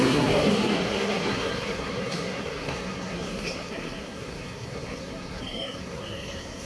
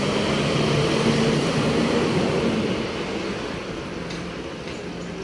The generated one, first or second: first